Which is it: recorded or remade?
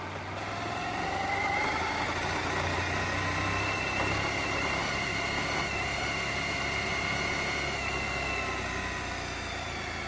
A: recorded